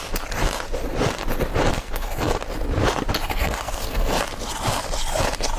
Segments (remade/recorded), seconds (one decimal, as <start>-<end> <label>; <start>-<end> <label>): 0.0-1.7 recorded; 1.7-2.4 remade; 2.4-3.3 recorded; 3.3-4.2 remade; 4.2-5.6 recorded